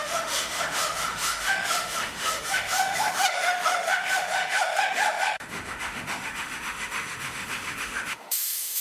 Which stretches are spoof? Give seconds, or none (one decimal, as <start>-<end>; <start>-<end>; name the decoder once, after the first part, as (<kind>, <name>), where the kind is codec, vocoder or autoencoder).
0.0-8.8 (autoencoder, DAC-VAE)

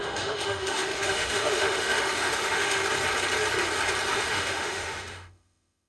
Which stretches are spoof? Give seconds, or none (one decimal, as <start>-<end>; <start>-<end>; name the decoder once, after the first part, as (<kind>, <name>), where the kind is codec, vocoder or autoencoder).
0.0-2.8 (autoencoder, DAC-VAE); 4.1-5.9

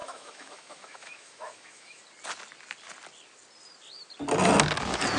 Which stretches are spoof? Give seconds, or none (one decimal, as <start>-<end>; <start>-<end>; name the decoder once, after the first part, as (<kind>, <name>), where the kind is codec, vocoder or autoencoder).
0.0-2.0 (autoencoder, DAC-VAE)

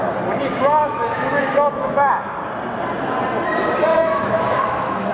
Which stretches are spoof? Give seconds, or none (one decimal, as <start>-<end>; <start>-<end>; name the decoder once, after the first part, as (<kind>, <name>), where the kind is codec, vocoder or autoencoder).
0.8-2.1 (autoencoder, DAC-VAE); 3.9-5.1

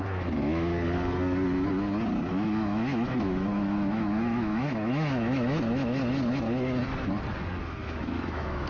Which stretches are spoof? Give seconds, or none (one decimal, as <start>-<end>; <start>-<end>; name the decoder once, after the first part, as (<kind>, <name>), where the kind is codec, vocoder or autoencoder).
0.0-0.7 (autoencoder, DAC-VAE); 2.3-6.0; 7.6-8.7

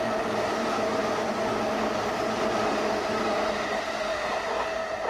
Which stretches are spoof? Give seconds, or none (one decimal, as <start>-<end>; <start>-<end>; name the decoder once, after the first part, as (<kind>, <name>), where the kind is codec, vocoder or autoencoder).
none

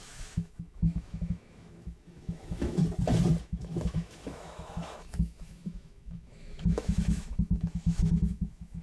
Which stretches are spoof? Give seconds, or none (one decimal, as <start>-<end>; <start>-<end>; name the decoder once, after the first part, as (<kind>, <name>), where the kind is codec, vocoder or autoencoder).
0.0-2.8 (autoencoder, DAC-VAE); 3.4-8.8

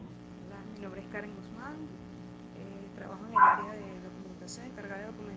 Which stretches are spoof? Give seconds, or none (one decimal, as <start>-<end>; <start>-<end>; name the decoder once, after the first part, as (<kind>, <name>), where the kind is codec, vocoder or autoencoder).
3.1-5.4 (autoencoder, DAC-VAE)